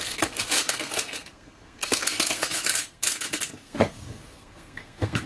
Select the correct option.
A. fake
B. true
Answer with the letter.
A